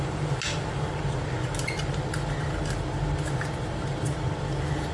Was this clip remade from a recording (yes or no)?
no